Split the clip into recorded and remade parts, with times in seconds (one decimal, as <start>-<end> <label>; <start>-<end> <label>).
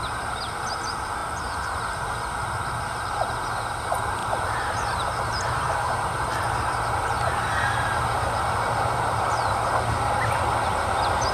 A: 0.0-1.2 recorded; 1.2-2.0 remade; 2.0-4.2 recorded; 4.2-9.4 remade; 9.4-11.3 recorded